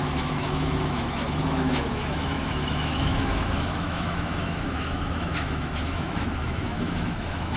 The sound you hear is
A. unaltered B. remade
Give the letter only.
B